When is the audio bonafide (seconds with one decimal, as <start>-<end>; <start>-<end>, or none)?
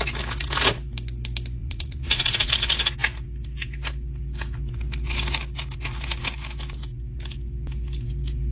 0.0-1.6; 2.5-8.5